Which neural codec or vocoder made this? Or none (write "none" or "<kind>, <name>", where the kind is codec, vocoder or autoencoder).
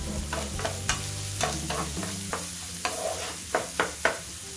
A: none